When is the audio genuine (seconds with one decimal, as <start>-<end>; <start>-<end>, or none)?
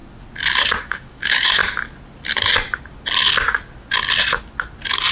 0.0-0.8; 1.6-5.1